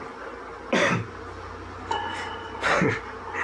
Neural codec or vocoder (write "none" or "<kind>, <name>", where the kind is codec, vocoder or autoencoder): none